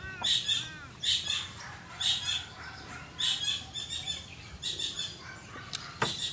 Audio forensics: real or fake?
real